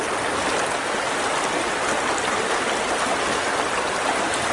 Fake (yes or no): no